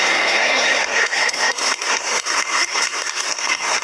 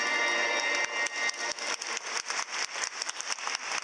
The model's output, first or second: first